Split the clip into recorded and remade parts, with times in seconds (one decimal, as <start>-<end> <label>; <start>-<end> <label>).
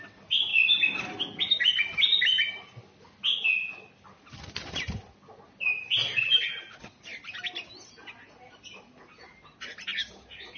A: 0.0-10.6 recorded